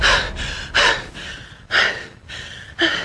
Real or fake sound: real